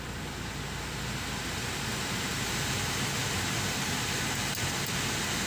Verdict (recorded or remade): recorded